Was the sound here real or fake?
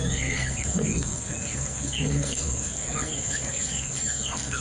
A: fake